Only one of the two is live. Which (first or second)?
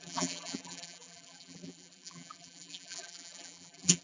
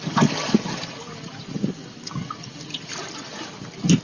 second